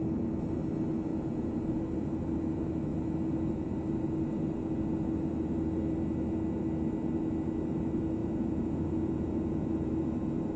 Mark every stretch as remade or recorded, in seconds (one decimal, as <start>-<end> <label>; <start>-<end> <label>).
0.0-1.1 recorded; 1.1-1.8 remade; 1.8-8.2 recorded; 8.2-9.9 remade; 9.9-10.6 recorded